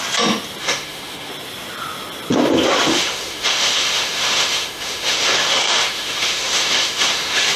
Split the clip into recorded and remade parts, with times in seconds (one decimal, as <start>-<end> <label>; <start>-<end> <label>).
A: 0.0-0.6 recorded; 0.6-1.3 remade; 1.3-2.9 recorded; 2.9-7.6 remade